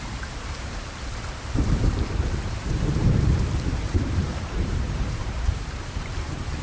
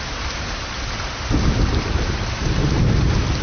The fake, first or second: first